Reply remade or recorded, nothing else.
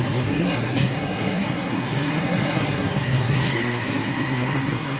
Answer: remade